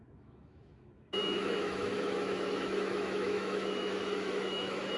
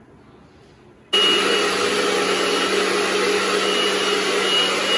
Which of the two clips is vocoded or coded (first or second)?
first